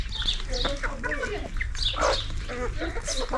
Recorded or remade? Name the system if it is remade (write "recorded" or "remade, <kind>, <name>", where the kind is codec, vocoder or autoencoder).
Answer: recorded